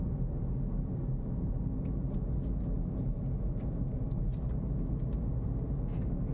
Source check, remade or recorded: recorded